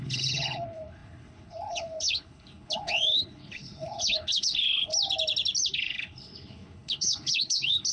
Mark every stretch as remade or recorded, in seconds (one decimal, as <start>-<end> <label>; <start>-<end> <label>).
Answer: 0.0-4.9 remade; 4.9-5.7 recorded; 5.7-7.9 remade